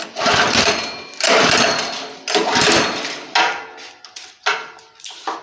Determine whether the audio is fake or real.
real